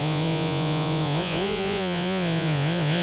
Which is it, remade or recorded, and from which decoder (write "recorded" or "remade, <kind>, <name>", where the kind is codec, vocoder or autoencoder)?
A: remade, vocoder, Vocos